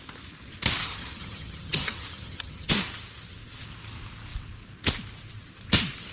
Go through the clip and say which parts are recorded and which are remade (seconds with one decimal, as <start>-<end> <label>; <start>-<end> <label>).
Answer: 0.0-0.8 recorded; 0.8-2.7 remade; 2.7-6.1 recorded